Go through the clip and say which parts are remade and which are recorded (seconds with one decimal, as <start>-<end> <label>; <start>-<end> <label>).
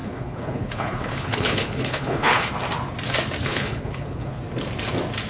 0.0-2.5 remade; 2.5-3.4 recorded; 3.4-4.4 remade; 4.4-5.3 recorded